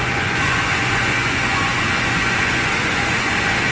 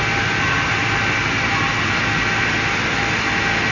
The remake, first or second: first